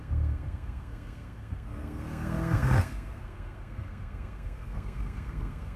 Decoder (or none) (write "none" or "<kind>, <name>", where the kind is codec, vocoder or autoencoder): codec, SNAC